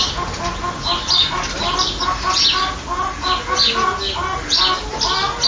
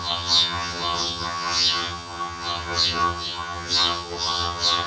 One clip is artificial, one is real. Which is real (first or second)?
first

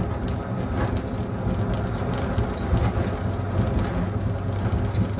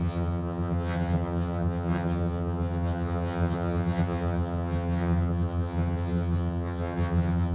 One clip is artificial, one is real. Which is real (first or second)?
first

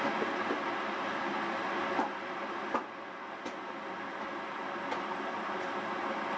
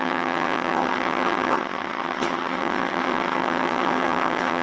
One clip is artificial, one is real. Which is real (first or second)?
first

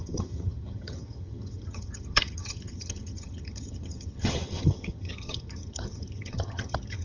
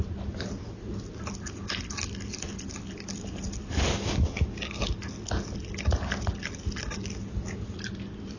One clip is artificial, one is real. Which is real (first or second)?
second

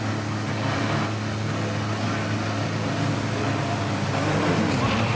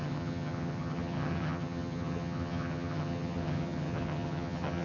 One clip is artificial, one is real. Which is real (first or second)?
first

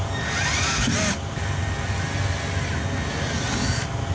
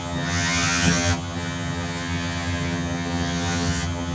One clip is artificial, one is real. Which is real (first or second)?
first